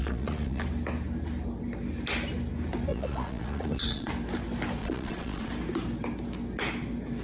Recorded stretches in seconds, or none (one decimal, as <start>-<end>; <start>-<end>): 0.6-2.9; 4.1-4.8; 5.5-7.2